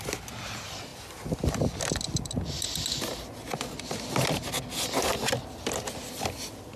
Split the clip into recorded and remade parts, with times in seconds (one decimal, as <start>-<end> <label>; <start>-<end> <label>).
0.0-6.8 recorded